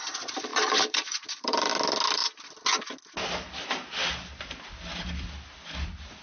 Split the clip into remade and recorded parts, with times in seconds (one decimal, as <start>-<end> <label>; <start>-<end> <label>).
0.0-0.5 recorded; 0.5-1.7 remade; 1.7-6.2 recorded